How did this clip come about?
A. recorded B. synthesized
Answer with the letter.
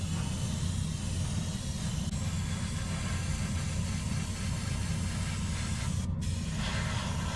A